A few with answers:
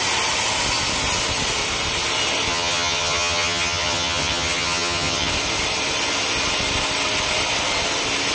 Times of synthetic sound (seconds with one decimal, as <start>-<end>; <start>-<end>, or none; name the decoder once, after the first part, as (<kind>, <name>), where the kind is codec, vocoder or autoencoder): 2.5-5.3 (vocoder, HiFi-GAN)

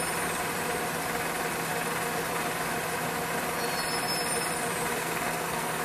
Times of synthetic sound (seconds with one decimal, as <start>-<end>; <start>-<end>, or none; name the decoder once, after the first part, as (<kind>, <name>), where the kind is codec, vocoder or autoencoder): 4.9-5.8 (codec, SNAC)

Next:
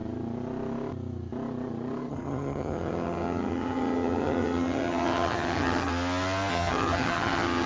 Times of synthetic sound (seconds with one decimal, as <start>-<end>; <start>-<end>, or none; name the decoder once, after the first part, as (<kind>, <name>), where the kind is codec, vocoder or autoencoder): 2.1-5.9 (vocoder, HiFi-GAN); 6.5-7.7

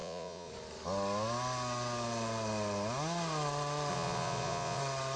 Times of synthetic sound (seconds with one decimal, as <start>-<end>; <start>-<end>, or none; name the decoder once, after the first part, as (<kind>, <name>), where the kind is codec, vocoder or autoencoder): 0.0-0.5 (vocoder, Vocos); 3.9-4.8

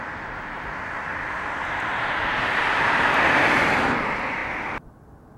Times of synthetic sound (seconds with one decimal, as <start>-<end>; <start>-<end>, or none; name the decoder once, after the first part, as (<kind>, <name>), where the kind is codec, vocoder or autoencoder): 1.1-2.2 (vocoder, BigVGAN v2)